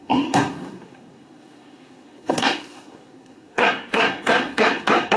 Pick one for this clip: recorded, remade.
remade